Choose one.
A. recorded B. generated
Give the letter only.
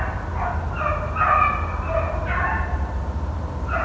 A